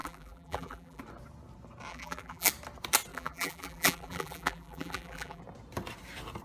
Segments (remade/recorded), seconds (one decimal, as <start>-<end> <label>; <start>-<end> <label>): 0.0-1.0 remade; 1.0-1.9 recorded; 1.9-2.5 remade; 2.5-3.1 recorded; 3.1-5.4 remade; 5.4-6.4 recorded